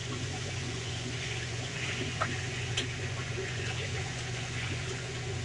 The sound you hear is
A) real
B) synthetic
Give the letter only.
B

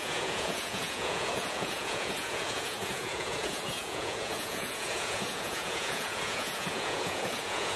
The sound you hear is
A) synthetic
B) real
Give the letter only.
A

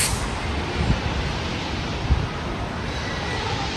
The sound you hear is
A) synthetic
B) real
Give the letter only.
B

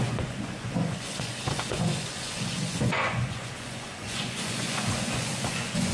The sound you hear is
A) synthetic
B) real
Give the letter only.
A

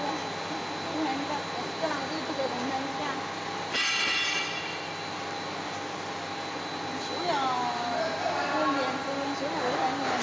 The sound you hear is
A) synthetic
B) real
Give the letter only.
B